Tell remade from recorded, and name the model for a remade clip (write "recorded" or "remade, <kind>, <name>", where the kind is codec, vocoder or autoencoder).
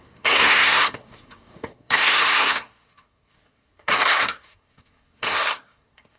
remade, codec, SNAC